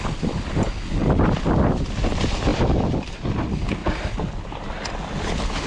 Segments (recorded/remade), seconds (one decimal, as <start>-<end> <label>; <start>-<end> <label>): 0.0-1.0 recorded; 1.0-1.6 remade; 1.6-3.8 recorded; 3.8-4.7 remade; 4.7-5.7 recorded